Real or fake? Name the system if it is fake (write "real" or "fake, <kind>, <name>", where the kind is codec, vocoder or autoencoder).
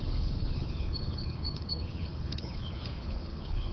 fake, codec, HILCodec